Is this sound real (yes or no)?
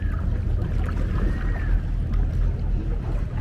yes